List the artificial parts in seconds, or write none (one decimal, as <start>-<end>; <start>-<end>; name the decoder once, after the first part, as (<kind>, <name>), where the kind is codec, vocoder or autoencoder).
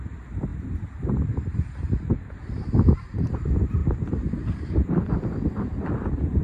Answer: 0.0-6.4 (vocoder, BigVGAN v2)